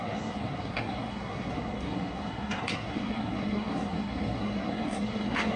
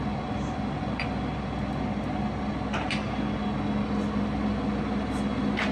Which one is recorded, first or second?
second